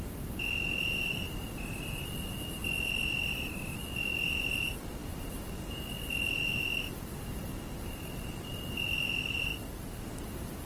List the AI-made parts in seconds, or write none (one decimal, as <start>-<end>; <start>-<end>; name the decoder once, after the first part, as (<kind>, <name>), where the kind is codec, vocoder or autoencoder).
none